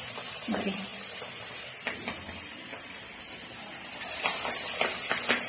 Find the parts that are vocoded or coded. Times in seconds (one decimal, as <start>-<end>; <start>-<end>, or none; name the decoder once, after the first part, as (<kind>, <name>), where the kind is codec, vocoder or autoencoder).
0.0-5.5 (vocoder, BigVGAN v2)